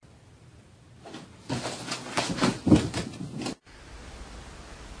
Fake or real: real